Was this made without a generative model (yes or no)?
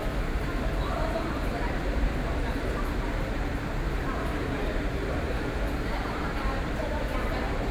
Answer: no